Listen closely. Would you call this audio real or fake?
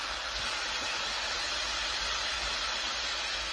real